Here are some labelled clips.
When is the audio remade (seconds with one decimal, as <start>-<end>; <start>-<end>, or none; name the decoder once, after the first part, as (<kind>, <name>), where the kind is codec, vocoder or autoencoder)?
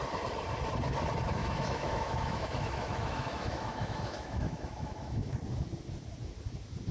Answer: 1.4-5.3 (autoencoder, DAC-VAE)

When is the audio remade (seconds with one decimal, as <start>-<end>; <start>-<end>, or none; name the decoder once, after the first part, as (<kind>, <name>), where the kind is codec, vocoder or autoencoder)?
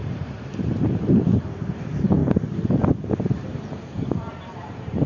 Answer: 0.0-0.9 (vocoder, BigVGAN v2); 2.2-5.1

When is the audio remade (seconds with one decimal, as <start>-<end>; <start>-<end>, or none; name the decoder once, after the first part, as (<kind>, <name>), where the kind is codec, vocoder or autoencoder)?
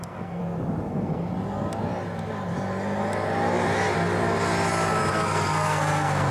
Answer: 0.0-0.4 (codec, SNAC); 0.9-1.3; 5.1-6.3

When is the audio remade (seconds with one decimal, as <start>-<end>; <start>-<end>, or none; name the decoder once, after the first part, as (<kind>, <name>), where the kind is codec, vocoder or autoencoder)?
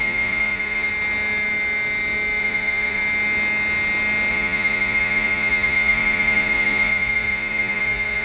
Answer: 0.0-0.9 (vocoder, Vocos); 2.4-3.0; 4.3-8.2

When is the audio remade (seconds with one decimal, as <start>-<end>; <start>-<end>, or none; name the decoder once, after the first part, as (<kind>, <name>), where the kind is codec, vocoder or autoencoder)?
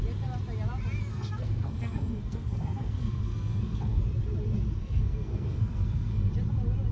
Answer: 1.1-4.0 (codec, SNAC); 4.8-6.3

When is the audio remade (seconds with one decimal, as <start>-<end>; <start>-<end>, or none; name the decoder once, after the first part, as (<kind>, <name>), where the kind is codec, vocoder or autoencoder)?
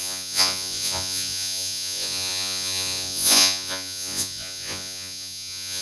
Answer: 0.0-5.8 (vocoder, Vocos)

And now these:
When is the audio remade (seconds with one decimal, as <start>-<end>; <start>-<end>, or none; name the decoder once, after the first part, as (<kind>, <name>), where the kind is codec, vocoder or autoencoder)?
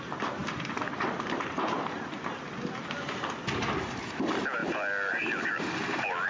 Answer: none